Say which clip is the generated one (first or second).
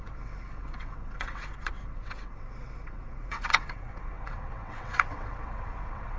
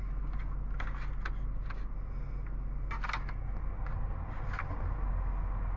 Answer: first